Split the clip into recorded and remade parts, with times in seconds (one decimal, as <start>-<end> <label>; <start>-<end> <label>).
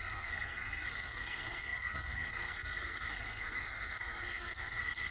0.0-5.1 remade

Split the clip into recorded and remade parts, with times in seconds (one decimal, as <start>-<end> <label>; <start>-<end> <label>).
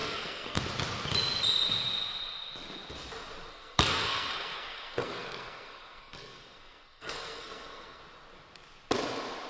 0.0-0.6 remade; 0.6-3.5 recorded; 3.5-8.0 remade; 8.0-9.5 recorded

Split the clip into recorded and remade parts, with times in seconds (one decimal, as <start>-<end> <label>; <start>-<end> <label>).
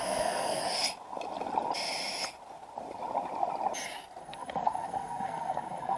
0.0-0.6 remade; 0.6-4.2 recorded; 4.2-6.0 remade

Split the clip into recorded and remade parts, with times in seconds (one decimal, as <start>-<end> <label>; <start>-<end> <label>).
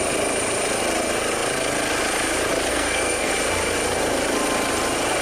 0.0-2.7 recorded; 2.7-3.3 remade; 3.3-5.2 recorded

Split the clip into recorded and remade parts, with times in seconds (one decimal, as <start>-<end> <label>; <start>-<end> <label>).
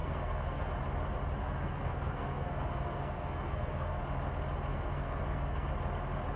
0.0-0.7 remade; 0.7-1.4 recorded; 1.4-4.0 remade; 4.0-4.7 recorded; 4.7-5.7 remade; 5.7-6.4 recorded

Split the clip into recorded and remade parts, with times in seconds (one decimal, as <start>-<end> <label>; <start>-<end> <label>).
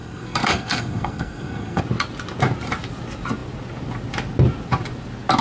0.0-1.8 remade; 1.8-5.4 recorded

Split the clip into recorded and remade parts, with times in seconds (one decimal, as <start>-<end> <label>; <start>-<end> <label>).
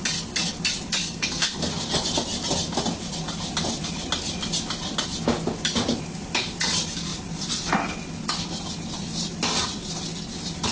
0.0-1.0 recorded; 1.0-1.7 remade; 1.7-10.7 recorded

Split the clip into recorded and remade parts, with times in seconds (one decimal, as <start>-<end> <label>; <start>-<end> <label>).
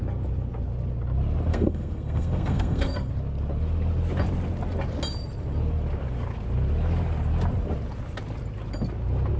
0.0-1.5 recorded; 1.5-3.1 remade; 3.1-9.4 recorded